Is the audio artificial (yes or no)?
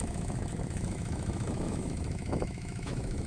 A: yes